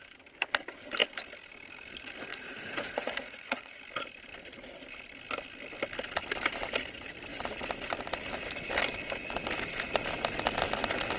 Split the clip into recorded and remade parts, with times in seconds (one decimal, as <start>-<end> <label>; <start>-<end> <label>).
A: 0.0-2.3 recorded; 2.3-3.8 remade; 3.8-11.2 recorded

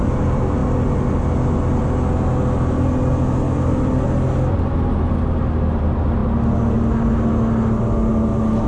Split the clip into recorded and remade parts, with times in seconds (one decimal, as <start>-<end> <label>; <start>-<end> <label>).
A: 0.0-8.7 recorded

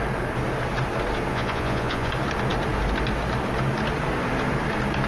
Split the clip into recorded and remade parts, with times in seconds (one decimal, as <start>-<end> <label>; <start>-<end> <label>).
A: 0.0-1.3 recorded; 1.3-2.1 remade; 2.1-5.1 recorded

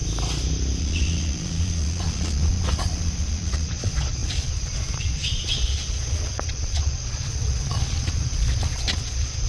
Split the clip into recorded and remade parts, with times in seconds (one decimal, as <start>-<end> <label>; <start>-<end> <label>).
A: 0.0-0.8 recorded; 0.8-9.5 remade

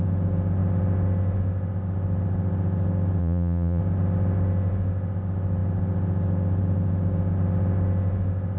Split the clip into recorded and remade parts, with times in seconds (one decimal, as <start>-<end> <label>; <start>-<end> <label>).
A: 0.0-3.2 recorded; 3.2-3.8 remade; 3.8-8.6 recorded

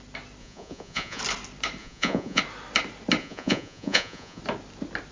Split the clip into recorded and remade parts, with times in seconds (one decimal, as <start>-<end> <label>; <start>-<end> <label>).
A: 0.0-0.4 recorded; 0.4-1.2 remade; 1.2-1.8 recorded; 1.8-2.4 remade; 2.4-3.2 recorded; 3.2-4.4 remade; 4.4-5.1 recorded

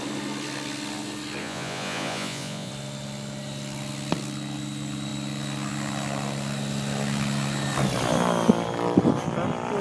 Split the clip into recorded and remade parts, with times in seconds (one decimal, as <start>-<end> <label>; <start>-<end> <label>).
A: 0.0-1.4 recorded; 1.4-2.7 remade; 2.7-9.8 recorded

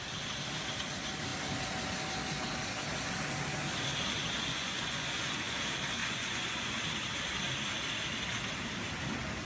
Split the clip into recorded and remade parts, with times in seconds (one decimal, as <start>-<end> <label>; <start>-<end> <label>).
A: 0.0-4.5 recorded; 4.5-5.6 remade; 5.6-6.0 recorded; 6.0-6.8 remade; 6.8-9.4 recorded